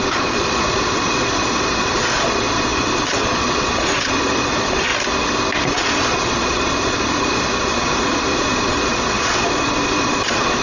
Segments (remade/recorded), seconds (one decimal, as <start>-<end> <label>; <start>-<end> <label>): 0.0-4.9 remade; 4.9-5.7 recorded; 5.7-10.6 remade